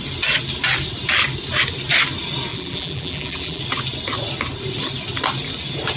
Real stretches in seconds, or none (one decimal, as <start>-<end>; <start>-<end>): 0.0-2.5; 3.6-6.0